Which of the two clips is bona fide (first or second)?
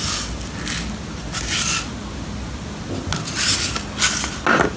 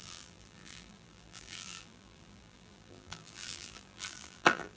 first